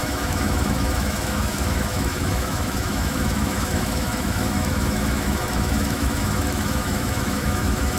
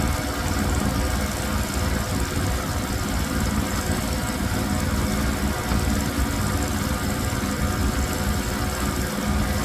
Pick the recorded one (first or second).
second